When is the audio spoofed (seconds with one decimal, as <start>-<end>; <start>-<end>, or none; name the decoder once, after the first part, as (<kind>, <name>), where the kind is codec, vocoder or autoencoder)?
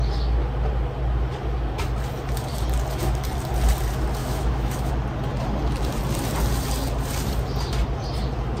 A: 4.2-4.9 (autoencoder, DAC-VAE)